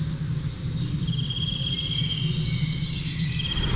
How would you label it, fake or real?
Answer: real